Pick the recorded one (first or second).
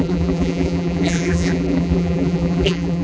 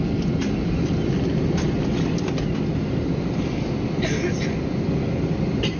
second